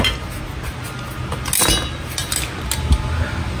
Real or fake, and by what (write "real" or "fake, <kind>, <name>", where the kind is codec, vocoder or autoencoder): real